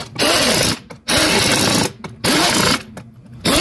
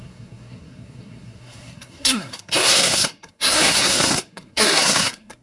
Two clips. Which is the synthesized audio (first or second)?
second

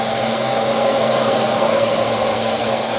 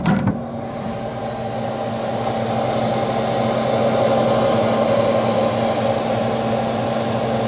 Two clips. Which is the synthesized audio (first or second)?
first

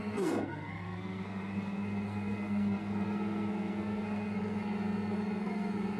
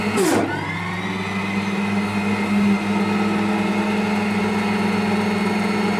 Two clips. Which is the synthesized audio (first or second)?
first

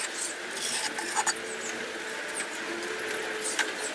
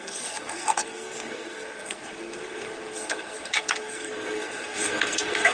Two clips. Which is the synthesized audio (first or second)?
second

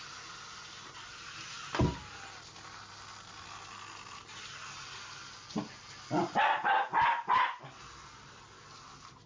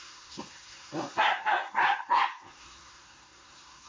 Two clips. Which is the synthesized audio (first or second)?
second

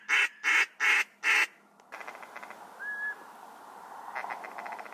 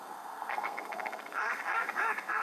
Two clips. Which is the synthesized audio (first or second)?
second